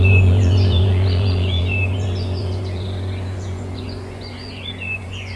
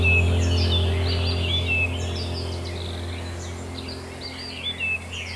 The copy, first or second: first